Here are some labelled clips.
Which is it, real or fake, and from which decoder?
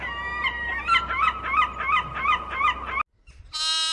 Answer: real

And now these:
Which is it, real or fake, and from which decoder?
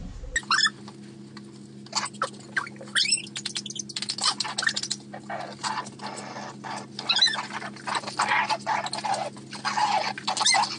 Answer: real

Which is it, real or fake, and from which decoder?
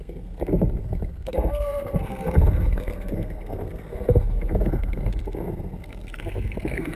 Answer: fake, codec, SNAC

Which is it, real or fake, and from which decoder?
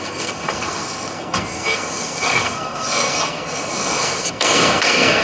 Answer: fake, codec, SNAC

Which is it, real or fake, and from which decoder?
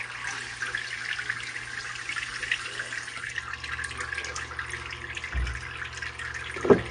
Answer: real